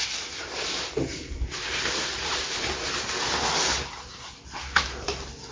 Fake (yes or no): no